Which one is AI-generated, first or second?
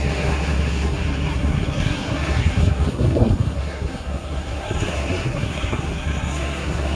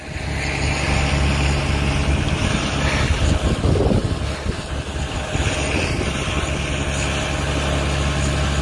first